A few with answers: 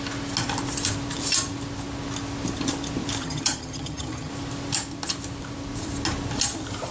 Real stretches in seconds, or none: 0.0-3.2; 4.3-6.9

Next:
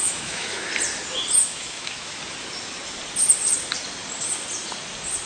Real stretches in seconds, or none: 0.7-1.4; 2.2-5.3

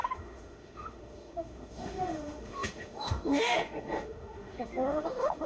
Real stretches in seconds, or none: none

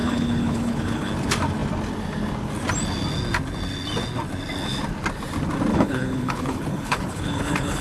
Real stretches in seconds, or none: 1.1-5.7

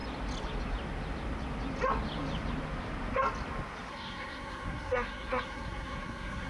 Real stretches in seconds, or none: 0.0-3.9

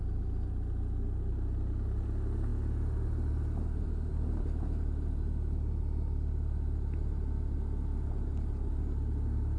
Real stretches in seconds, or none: 0.0-9.6

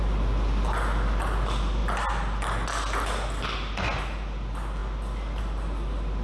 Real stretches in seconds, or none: 0.0-6.2